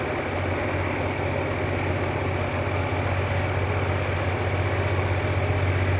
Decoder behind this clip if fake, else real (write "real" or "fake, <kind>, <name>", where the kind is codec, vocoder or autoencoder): real